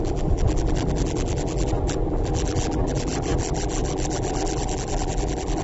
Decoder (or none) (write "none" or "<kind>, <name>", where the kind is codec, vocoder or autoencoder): vocoder, BigVGAN v2